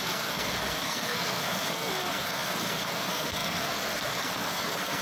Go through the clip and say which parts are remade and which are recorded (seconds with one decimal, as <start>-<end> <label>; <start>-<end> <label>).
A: 0.0-5.0 remade